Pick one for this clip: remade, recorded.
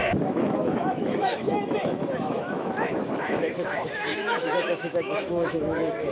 remade